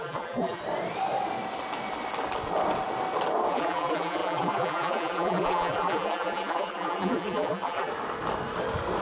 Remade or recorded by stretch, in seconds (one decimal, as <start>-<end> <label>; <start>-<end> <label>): 0.0-0.6 remade; 0.6-3.5 recorded; 3.5-7.9 remade; 7.9-9.0 recorded